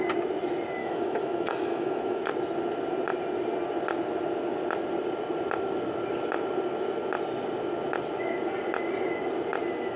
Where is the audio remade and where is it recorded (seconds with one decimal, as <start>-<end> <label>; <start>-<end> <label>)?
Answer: 0.0-0.8 recorded; 0.8-2.2 remade; 2.2-10.0 recorded